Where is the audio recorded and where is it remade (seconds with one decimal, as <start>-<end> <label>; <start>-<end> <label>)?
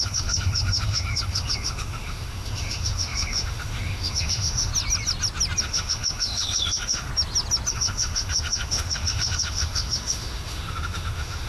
0.0-4.7 remade; 4.7-5.6 recorded; 5.6-7.1 remade; 7.1-7.7 recorded; 7.7-11.5 remade